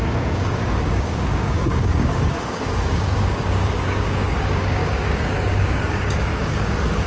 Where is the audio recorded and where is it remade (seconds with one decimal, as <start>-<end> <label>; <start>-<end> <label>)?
0.0-7.1 remade